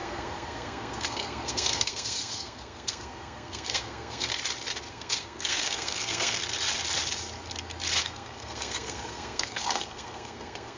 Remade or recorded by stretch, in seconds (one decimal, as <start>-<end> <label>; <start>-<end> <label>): 0.0-4.3 remade; 4.3-4.9 recorded; 4.9-6.4 remade; 6.4-8.0 recorded; 8.0-10.8 remade